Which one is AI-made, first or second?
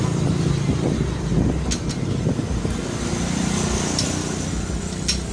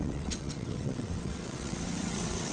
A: second